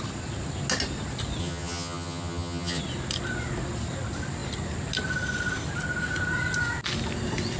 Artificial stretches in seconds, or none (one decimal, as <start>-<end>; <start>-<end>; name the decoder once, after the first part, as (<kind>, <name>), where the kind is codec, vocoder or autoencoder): 1.4-2.8 (vocoder, HiFi-GAN)